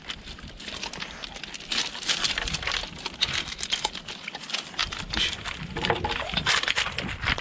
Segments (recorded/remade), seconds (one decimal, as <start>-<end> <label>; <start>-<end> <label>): 0.0-7.4 remade